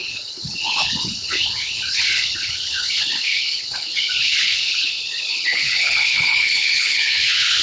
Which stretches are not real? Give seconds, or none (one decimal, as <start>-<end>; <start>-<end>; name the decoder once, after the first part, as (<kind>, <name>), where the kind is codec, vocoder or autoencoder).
0.0-7.6 (codec, HILCodec)